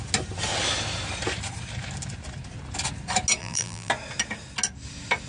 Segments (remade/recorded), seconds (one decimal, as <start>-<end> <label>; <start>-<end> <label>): 0.0-3.4 recorded; 3.4-3.9 remade; 3.9-5.3 recorded